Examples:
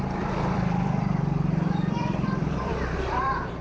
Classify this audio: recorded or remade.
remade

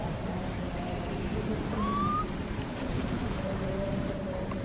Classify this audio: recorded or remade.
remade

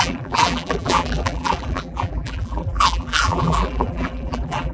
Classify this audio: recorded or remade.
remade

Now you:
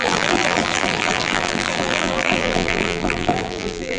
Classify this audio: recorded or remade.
remade